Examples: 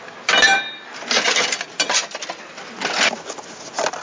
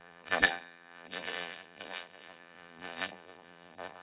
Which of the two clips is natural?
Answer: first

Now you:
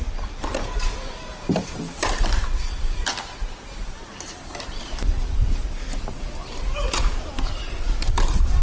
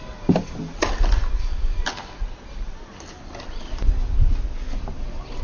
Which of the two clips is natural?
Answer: second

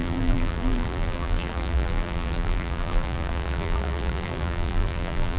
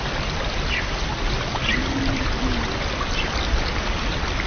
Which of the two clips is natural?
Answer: second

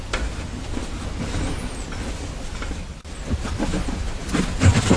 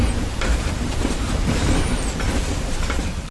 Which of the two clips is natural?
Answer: first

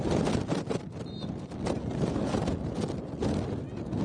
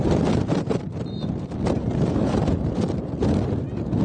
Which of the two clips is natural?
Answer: first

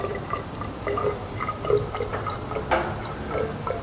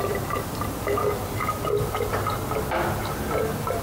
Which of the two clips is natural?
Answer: second